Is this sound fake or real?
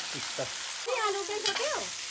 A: real